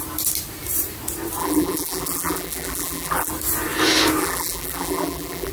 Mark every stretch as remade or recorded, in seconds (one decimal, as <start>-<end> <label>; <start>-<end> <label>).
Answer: 0.0-1.4 recorded; 1.4-3.3 remade; 3.3-4.2 recorded; 4.2-5.5 remade